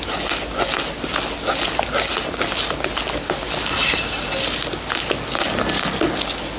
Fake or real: real